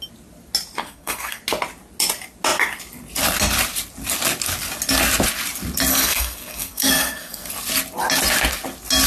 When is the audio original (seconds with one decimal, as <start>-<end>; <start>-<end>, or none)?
0.0-0.8; 1.4-5.9; 7.5-9.1